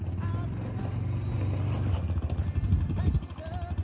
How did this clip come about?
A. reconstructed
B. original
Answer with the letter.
B